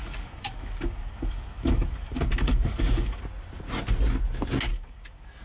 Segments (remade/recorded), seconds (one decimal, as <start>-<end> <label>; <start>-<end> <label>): 0.0-3.2 remade; 3.2-4.7 recorded; 4.7-5.4 remade